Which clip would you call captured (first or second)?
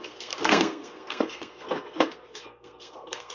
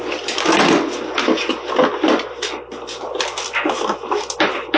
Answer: second